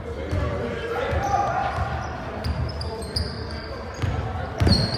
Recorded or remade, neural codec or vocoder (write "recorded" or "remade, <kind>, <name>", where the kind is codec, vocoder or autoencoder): remade, vocoder, BigVGAN v2